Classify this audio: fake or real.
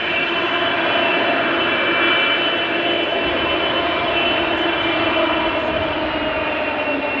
real